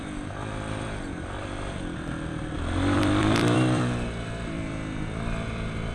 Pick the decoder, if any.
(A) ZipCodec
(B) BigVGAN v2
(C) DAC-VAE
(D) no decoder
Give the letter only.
B